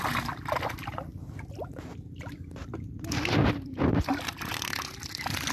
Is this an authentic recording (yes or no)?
yes